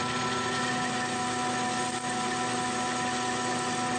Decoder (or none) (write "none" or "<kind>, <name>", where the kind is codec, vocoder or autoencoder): none